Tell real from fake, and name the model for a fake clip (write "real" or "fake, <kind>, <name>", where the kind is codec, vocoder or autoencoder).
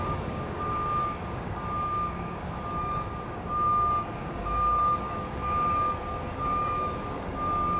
fake, codec, DAC